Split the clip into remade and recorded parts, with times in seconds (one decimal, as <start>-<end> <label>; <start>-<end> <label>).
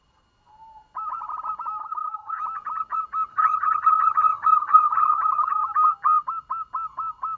0.0-1.8 recorded; 1.8-2.4 remade; 2.4-3.3 recorded; 3.3-5.7 remade; 5.7-7.4 recorded